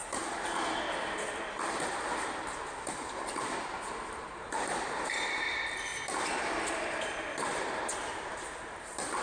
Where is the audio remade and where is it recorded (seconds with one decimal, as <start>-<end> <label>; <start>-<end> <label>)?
0.0-2.9 recorded; 2.9-5.9 remade; 5.9-6.7 recorded; 6.7-9.2 remade

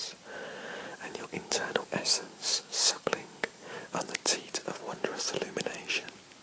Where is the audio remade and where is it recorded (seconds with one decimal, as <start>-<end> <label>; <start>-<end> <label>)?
0.0-0.9 recorded; 0.9-4.0 remade; 4.0-6.4 recorded

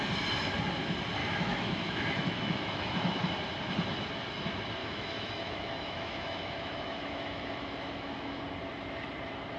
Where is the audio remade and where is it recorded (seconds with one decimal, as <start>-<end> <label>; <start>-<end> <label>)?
0.0-1.2 recorded; 1.2-3.2 remade; 3.2-4.8 recorded; 4.8-8.4 remade; 8.4-9.6 recorded

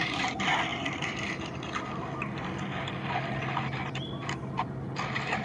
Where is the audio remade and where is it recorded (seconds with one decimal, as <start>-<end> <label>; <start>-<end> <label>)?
0.0-5.4 recorded

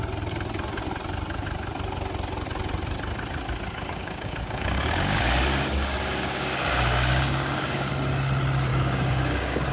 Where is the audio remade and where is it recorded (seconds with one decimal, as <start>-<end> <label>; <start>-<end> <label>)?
0.0-3.8 recorded; 3.8-7.9 remade; 7.9-8.7 recorded; 8.7-9.7 remade